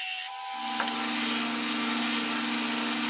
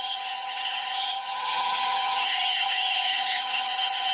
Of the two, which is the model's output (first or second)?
second